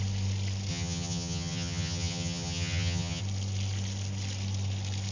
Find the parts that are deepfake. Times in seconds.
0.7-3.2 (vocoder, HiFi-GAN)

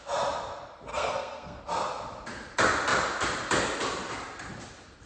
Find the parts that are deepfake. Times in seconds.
0.9-1.6 (codec, SNAC)

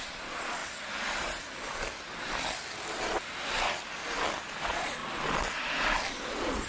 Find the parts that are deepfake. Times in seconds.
0.0-0.6 (vocoder, Vocos); 4.6-5.0; 6.1-6.7

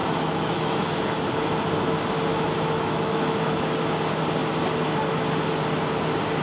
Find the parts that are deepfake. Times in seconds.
0.0-1.0 (autoencoder, DAC-VAE); 2.3-3.6

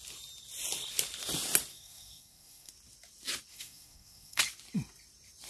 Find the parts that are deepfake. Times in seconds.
1.7-2.7 (codec, SNAC); 3.5-4.4

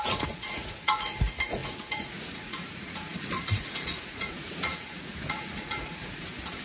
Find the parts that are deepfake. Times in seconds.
0.0-6.6 (vocoder, Vocos)

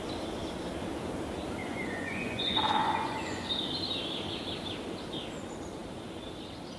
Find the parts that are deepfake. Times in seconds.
1.6-3.5 (vocoder, Vocos)